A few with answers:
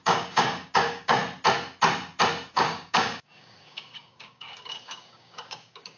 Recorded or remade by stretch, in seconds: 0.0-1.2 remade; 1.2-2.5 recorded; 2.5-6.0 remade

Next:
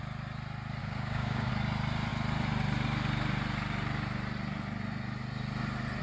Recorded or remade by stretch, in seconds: 0.0-0.8 recorded; 0.8-1.5 remade; 1.5-6.0 recorded

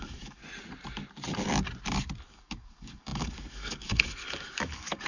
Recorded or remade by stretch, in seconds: 0.0-0.4 remade; 0.4-2.3 recorded; 2.3-5.1 remade

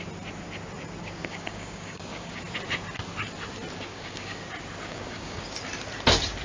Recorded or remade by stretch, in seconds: 0.0-1.0 recorded; 1.0-2.4 remade; 2.4-3.9 recorded; 3.9-4.4 remade; 4.4-4.9 recorded; 4.9-5.6 remade; 5.6-6.4 recorded

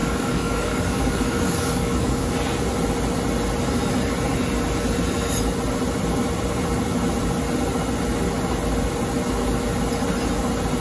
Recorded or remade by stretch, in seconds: 0.0-2.3 remade; 2.3-10.8 recorded